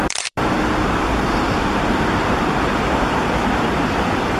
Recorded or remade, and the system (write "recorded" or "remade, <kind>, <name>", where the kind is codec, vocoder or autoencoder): remade, vocoder, BigVGAN v2